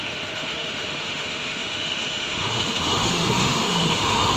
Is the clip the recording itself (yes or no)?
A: no